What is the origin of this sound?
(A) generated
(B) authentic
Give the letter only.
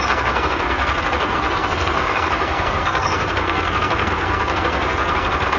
A